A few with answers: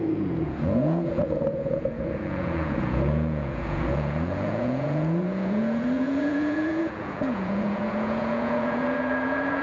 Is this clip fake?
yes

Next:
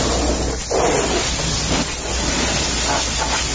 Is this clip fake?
no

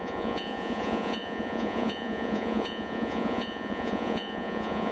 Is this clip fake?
yes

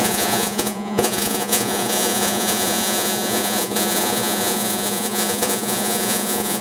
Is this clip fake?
yes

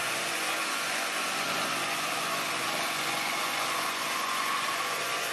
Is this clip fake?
yes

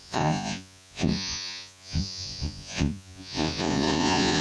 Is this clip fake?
yes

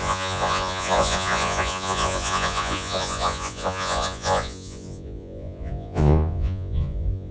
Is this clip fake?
yes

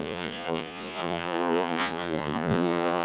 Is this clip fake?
yes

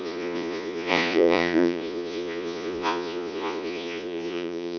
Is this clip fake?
yes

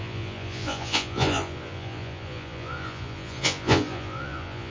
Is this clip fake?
yes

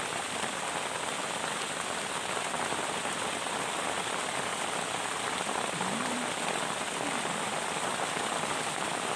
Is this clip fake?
no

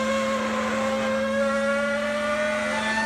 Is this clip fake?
no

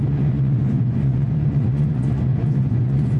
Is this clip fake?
yes